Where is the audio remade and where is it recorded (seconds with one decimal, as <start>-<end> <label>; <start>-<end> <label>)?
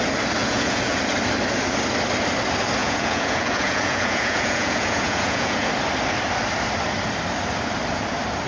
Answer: 0.0-0.4 recorded; 0.4-1.0 remade; 1.0-2.8 recorded; 2.8-5.7 remade; 5.7-8.5 recorded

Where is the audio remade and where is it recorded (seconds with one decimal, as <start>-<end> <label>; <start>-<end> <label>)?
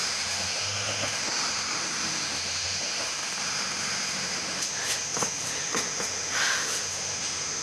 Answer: 0.0-7.6 remade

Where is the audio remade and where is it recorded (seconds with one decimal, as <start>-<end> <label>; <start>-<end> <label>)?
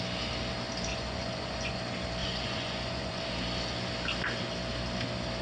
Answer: 0.0-0.9 recorded; 0.9-1.8 remade; 1.8-2.2 recorded; 2.2-3.2 remade; 3.2-5.4 recorded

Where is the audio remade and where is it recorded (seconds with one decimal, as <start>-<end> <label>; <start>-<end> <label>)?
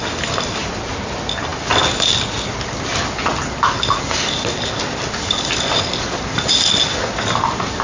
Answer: 0.0-7.8 recorded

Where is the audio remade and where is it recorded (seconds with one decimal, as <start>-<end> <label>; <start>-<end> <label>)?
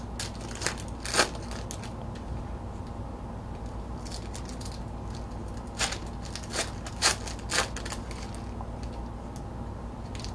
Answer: 0.0-10.3 recorded